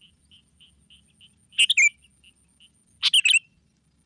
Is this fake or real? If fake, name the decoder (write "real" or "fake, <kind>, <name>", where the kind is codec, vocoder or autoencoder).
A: real